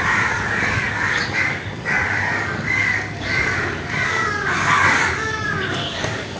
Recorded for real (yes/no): no